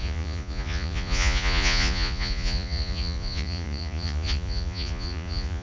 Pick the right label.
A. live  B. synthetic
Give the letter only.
B